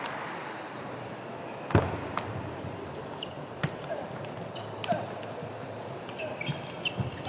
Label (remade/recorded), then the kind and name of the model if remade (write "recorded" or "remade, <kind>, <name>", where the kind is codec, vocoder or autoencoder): recorded